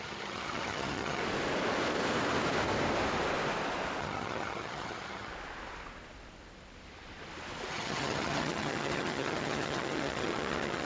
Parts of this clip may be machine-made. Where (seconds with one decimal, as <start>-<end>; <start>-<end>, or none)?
0.0-1.2; 4.0-5.3; 7.7-10.9